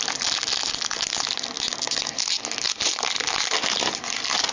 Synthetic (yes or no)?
no